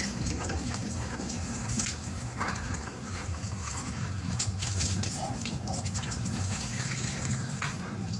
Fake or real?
fake